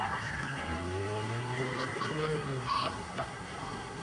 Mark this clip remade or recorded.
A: remade